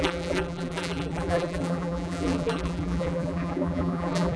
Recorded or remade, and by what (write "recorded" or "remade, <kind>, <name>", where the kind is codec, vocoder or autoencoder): remade, vocoder, BigVGAN v2